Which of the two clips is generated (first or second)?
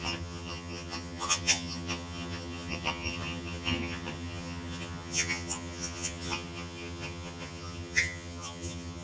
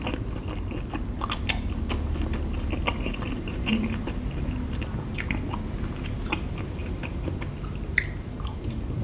first